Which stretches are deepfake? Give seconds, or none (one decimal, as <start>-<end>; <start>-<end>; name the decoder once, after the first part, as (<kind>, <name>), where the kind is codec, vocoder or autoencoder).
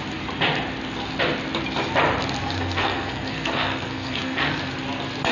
2.4-4.7 (codec, SNAC)